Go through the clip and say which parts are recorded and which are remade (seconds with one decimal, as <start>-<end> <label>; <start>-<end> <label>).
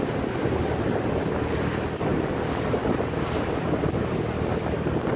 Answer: 0.0-5.2 recorded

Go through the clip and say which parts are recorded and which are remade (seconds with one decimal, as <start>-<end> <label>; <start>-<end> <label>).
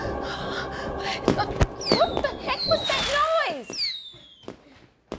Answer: 0.0-5.2 recorded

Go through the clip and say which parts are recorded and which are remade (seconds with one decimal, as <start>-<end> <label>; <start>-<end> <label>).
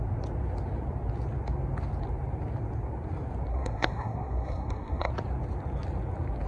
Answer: 0.0-3.5 recorded; 3.5-5.1 remade; 5.1-6.5 recorded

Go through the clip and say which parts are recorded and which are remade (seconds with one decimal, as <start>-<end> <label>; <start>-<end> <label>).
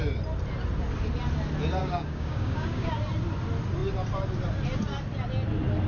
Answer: 0.0-1.8 recorded; 1.8-3.0 remade; 3.0-5.9 recorded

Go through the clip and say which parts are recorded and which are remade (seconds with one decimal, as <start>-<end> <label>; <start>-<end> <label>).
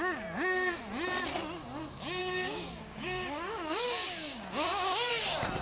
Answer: 0.0-2.2 recorded; 2.2-5.1 remade; 5.1-5.6 recorded